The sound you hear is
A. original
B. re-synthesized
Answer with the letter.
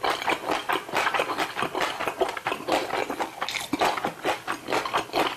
A